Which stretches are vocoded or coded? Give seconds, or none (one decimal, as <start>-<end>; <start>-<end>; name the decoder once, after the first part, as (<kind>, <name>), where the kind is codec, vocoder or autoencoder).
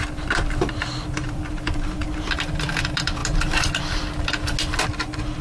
0.0-2.0 (vocoder, BigVGAN v2); 2.8-3.2; 4.8-5.4